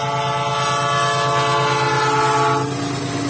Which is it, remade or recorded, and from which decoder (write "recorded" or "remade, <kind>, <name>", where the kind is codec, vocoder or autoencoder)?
recorded